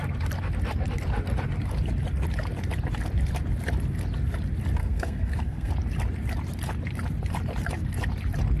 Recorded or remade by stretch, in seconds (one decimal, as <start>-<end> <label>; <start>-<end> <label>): 0.0-4.8 recorded; 4.8-5.7 remade; 5.7-8.6 recorded